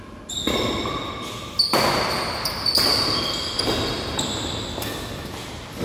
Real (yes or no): yes